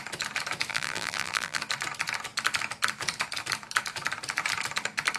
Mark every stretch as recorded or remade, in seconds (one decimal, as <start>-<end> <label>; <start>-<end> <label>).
0.0-0.7 recorded; 0.7-1.6 remade; 1.6-5.2 recorded